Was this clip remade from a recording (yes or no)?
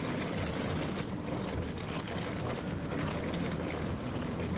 no